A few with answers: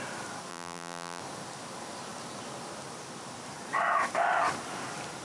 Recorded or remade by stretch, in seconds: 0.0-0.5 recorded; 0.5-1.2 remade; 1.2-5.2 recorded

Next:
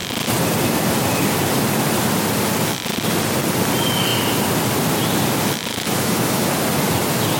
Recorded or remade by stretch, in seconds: 0.0-5.7 recorded; 5.7-6.5 remade; 6.5-7.4 recorded

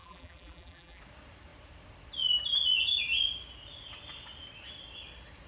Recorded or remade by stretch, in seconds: 0.0-1.0 remade; 1.0-5.5 recorded

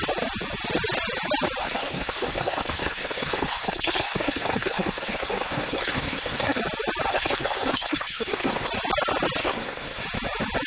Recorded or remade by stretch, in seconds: 0.0-1.6 recorded; 1.6-6.6 remade; 6.6-7.1 recorded; 7.1-8.7 remade; 8.7-9.4 recorded; 9.4-10.0 remade; 10.0-10.7 recorded

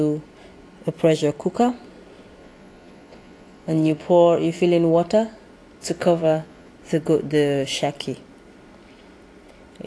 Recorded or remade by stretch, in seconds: 0.0-2.4 recorded; 2.4-4.6 remade; 4.6-5.8 recorded; 5.8-6.7 remade; 6.7-9.9 recorded